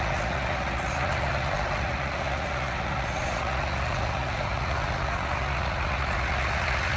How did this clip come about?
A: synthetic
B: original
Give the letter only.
A